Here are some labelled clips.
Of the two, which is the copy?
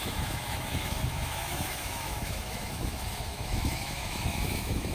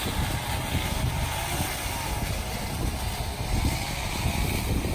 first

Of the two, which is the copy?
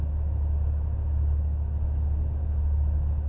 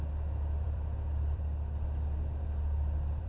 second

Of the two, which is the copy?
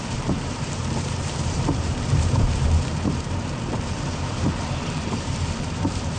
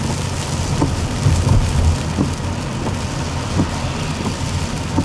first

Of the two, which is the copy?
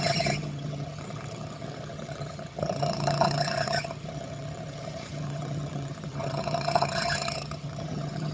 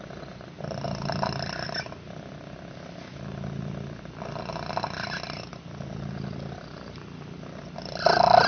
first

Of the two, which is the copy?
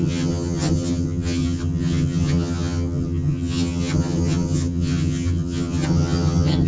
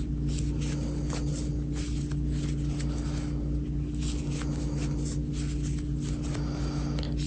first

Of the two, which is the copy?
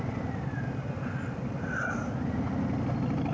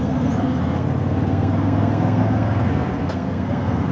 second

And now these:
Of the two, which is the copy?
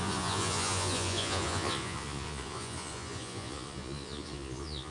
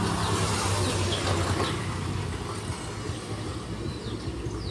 first